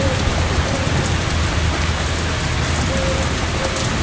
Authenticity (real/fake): real